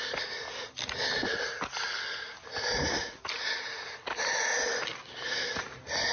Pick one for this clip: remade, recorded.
recorded